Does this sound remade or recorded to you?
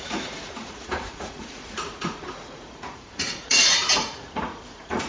remade